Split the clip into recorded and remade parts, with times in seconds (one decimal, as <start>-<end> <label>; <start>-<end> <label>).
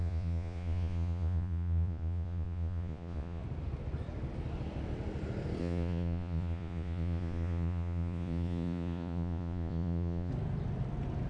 0.0-3.4 remade; 3.4-5.6 recorded; 5.6-10.3 remade; 10.3-11.3 recorded